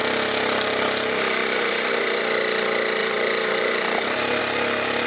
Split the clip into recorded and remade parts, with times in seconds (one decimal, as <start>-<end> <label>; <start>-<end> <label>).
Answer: 0.0-1.4 recorded; 1.4-2.2 remade; 2.2-3.0 recorded; 3.0-4.4 remade; 4.4-5.1 recorded